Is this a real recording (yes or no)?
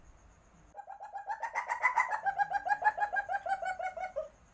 yes